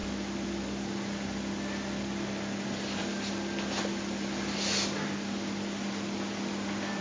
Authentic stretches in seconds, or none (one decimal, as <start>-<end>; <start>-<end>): 0.0-7.0